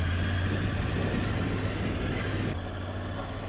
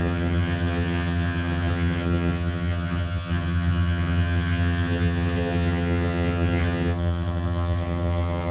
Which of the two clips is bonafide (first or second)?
first